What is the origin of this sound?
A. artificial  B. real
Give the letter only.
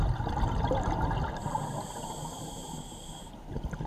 B